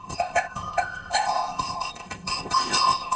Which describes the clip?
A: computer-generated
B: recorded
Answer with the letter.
A